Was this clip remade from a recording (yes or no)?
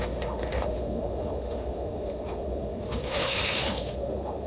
yes